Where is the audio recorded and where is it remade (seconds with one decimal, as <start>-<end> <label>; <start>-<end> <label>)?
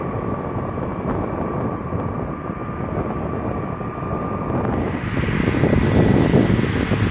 0.0-7.1 recorded